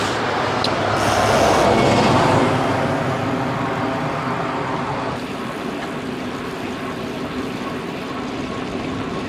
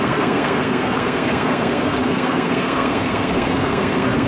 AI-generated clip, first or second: second